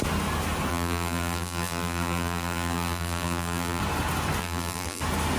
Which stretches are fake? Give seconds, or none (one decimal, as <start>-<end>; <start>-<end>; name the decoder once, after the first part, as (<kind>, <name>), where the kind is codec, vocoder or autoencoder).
0.7-3.8 (vocoder, BigVGAN v2); 4.4-5.0